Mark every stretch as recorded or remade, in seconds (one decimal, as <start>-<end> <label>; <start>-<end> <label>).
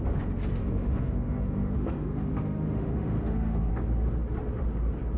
0.0-0.6 recorded; 0.6-3.7 remade; 3.7-5.2 recorded